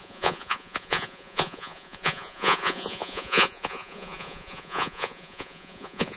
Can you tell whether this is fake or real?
fake